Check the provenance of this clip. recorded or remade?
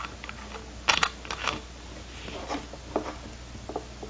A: recorded